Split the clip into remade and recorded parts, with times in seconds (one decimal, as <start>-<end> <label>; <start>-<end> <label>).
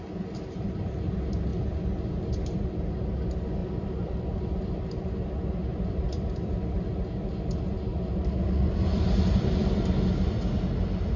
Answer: 0.0-3.6 recorded; 3.6-4.2 remade; 4.2-5.7 recorded; 5.7-6.7 remade; 6.7-7.9 recorded; 7.9-9.7 remade; 9.7-11.2 recorded